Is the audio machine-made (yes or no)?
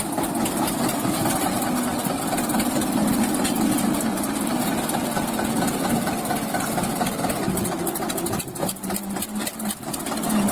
no